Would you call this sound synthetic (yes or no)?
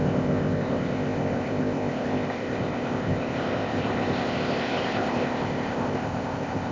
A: yes